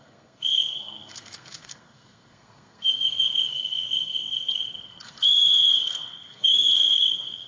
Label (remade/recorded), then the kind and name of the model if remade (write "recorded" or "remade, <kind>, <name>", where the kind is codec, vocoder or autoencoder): remade, codec, SNAC